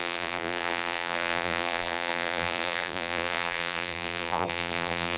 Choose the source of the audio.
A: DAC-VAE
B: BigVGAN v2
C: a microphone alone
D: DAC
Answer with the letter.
B